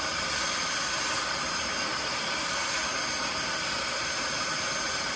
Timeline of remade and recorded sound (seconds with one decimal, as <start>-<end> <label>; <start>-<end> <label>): 0.0-5.2 recorded